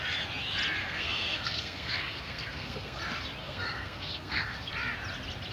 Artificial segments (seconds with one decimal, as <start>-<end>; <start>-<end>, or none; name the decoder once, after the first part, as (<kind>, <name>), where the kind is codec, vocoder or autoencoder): 0.8-3.0 (codec, SNAC); 3.4-4.7